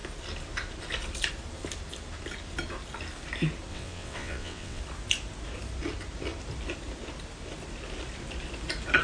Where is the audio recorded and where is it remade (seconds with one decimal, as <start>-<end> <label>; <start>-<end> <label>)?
0.0-3.7 recorded; 3.7-4.8 remade; 4.8-9.0 recorded